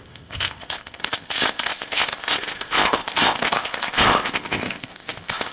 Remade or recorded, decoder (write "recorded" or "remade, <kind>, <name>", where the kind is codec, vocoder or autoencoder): remade, codec, ZipCodec